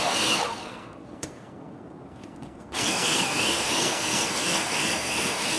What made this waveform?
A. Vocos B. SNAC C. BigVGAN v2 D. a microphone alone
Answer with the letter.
B